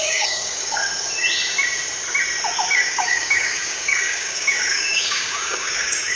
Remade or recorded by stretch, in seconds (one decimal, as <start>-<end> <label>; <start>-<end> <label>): 0.0-0.8 remade; 0.8-2.7 recorded; 2.7-6.2 remade